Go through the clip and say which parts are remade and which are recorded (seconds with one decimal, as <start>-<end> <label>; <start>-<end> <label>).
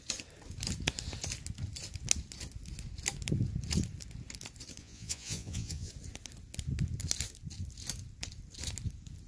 0.0-4.8 recorded; 4.8-5.9 remade; 5.9-9.3 recorded